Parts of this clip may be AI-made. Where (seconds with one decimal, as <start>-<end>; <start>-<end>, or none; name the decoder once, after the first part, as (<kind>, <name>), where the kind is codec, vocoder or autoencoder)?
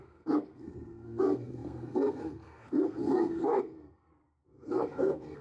0.0-5.4 (codec, SNAC)